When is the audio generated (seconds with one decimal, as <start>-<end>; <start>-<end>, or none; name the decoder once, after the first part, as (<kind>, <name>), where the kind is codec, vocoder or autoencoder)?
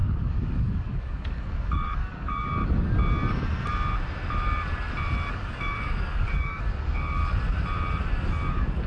0.0-2.6 (codec, DAC); 5.3-7.2; 8.5-8.9